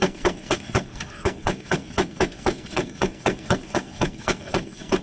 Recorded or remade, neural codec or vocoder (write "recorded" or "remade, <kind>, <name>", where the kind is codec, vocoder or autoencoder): remade, codec, SNAC